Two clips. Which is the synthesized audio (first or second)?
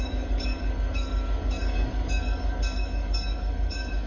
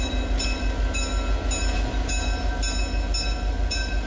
first